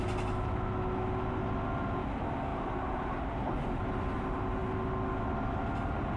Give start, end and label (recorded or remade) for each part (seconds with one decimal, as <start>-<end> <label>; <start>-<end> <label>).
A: 0.0-2.5 recorded; 2.5-3.8 remade; 3.8-6.2 recorded